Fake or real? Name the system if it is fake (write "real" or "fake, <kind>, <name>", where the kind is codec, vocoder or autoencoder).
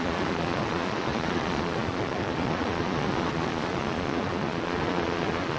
fake, vocoder, Vocos